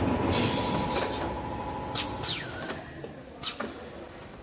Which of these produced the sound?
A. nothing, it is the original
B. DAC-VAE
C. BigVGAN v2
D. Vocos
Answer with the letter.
A